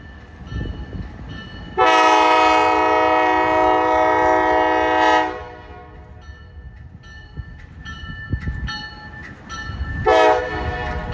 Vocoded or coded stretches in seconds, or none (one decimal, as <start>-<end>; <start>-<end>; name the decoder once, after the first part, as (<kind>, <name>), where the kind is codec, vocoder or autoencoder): none